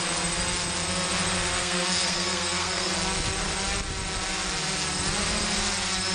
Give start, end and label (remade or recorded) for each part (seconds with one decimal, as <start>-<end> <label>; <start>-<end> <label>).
0.0-1.6 recorded; 1.6-2.9 remade; 2.9-6.1 recorded